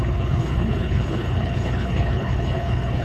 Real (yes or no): no